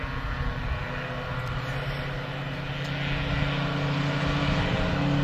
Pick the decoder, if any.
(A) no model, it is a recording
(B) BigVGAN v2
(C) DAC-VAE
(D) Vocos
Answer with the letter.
A